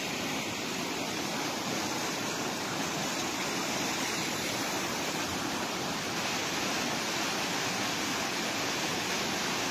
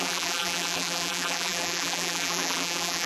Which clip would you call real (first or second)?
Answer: first